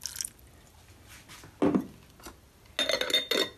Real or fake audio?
real